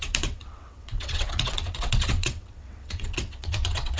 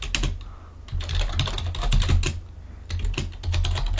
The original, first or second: second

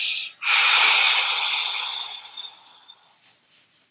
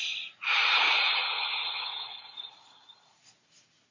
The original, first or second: first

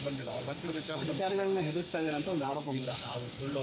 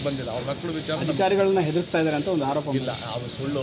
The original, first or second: second